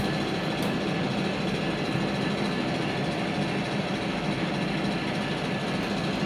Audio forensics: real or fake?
real